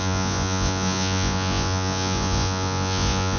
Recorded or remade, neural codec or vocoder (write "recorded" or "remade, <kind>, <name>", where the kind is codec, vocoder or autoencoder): remade, vocoder, Vocos